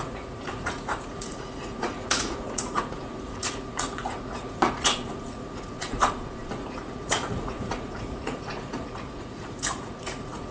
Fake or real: fake